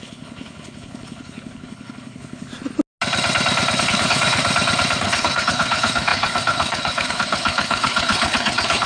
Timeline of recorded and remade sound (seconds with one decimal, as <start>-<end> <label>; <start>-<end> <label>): 0.0-2.5 remade; 2.5-3.8 recorded; 3.8-4.4 remade; 4.4-5.0 recorded; 5.0-8.9 remade